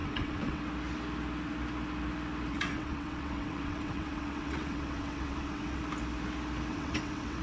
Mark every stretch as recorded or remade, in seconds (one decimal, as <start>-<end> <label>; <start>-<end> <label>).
0.0-0.6 remade; 0.6-2.5 recorded; 2.5-5.8 remade; 5.8-6.7 recorded; 6.7-7.4 remade